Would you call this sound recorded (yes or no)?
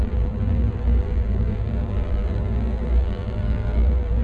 no